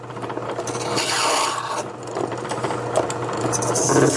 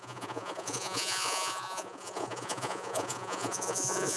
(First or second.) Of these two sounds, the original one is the first